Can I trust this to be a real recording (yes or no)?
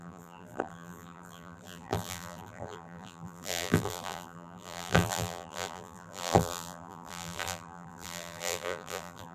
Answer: no